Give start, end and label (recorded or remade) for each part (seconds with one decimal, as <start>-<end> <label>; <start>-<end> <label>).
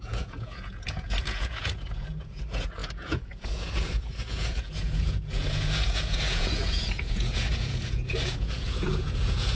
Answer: 0.0-9.5 remade